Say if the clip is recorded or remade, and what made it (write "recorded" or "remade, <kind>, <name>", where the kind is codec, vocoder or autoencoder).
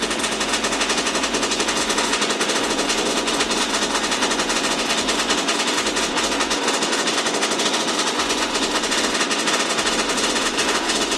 remade, vocoder, Vocos